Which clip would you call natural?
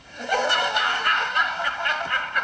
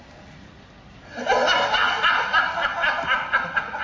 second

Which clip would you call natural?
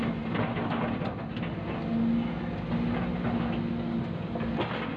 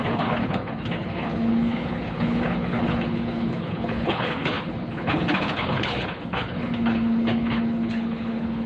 first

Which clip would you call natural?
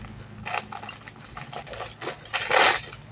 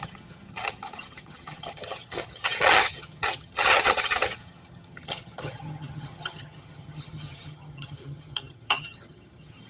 first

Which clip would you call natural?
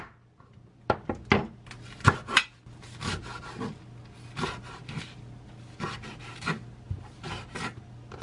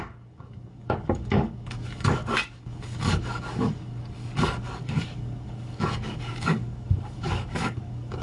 first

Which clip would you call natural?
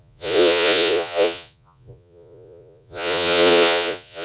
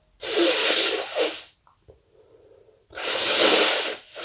second